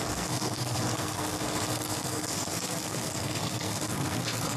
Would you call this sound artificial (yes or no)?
yes